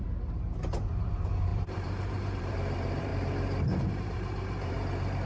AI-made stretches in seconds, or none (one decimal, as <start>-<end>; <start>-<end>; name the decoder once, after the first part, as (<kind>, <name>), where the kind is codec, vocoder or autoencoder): 0.0-5.3 (vocoder, BigVGAN v2)